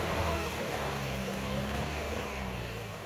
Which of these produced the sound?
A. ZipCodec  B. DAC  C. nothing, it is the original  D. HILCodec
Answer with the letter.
B